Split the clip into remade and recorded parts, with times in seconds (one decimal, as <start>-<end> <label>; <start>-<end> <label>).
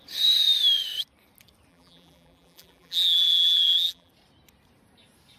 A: 0.0-1.7 recorded; 1.7-4.1 remade; 4.1-5.4 recorded